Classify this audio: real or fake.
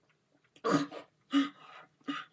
real